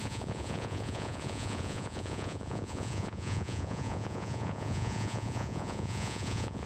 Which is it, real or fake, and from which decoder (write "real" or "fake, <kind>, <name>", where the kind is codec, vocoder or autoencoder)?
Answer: fake, vocoder, Vocos